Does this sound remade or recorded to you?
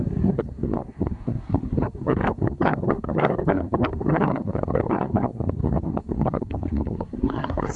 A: remade